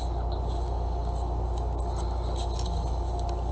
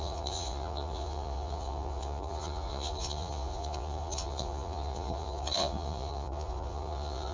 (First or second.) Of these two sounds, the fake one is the second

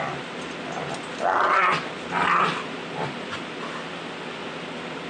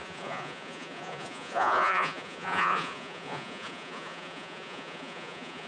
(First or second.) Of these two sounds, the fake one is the second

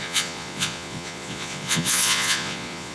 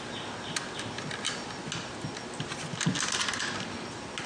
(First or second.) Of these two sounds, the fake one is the first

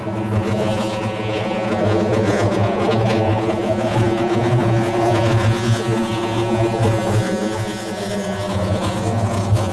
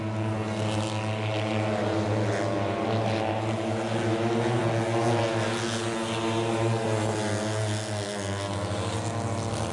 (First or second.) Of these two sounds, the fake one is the first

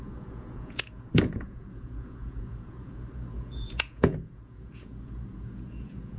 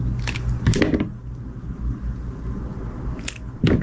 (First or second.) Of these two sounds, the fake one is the first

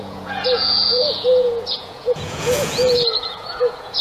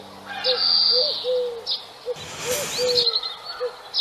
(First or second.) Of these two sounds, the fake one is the first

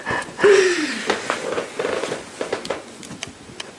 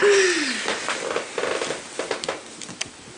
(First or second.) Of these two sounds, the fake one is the first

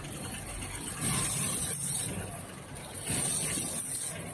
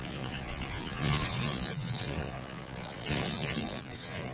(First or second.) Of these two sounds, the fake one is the second